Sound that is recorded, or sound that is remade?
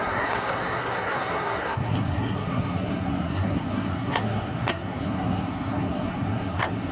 remade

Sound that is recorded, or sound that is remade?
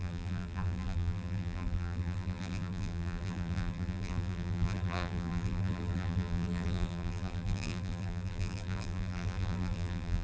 remade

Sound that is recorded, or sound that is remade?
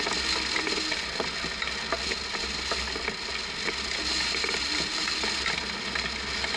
recorded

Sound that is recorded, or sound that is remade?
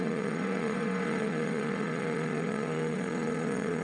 remade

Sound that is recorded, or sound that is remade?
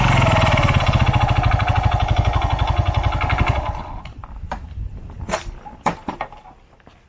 recorded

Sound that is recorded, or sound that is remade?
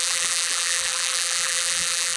remade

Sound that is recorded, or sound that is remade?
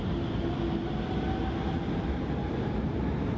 recorded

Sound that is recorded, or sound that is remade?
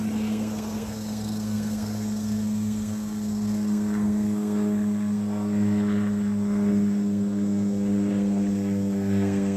remade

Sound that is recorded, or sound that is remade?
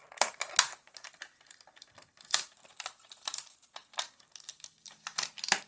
recorded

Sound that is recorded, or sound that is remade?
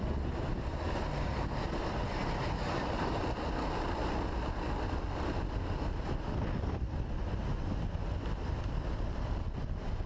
recorded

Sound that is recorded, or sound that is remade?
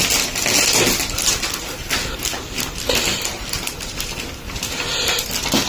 recorded